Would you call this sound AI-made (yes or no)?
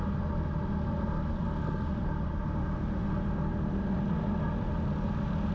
no